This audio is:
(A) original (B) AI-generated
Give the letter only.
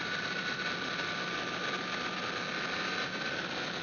A